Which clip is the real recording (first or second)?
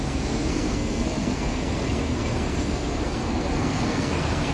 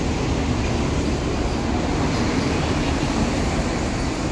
second